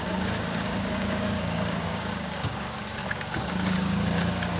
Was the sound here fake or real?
fake